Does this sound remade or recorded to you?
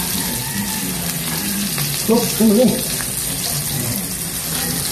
recorded